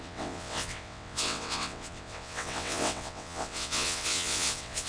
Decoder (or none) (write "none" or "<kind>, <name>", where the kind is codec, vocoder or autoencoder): vocoder, WaveNeXt